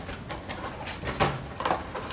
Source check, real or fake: real